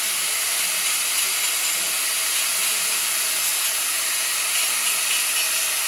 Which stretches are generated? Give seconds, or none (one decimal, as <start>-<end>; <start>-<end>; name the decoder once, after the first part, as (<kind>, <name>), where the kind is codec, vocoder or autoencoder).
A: none

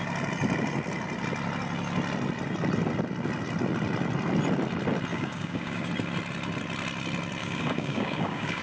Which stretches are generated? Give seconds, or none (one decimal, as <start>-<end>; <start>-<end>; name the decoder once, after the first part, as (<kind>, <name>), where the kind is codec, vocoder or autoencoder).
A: 5.1-5.9 (codec, DAC); 7.4-8.6

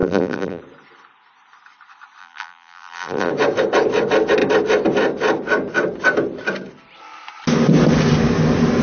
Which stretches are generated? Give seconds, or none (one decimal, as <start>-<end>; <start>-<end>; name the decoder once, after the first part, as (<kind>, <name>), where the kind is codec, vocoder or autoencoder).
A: 0.0-0.6 (vocoder, BigVGAN v2); 2.2-3.3